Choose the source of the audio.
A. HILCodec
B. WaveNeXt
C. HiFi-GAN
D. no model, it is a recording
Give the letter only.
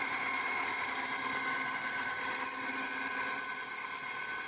D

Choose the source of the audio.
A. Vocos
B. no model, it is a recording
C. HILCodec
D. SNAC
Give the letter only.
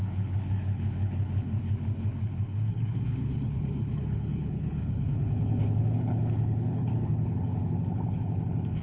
C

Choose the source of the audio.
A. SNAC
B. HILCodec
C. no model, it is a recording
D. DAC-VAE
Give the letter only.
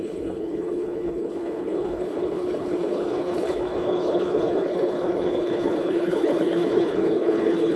B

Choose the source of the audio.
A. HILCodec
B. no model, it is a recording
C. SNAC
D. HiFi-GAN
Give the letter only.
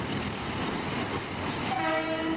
B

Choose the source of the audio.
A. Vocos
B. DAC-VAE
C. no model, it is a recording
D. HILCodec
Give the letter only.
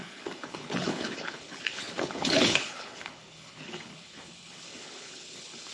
D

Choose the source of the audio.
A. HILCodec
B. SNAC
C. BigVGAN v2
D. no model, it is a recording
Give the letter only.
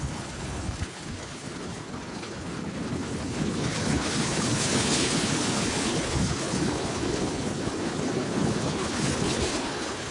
A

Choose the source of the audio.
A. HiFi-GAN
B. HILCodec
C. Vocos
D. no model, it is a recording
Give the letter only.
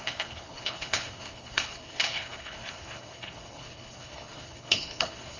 B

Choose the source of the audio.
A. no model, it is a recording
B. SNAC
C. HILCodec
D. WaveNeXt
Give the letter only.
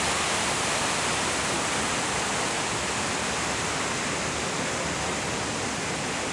A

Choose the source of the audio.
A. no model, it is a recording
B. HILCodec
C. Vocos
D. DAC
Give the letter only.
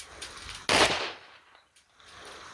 A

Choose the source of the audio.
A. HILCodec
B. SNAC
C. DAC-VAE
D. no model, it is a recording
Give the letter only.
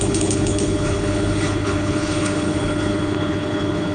A